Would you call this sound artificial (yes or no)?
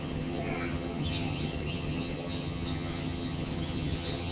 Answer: yes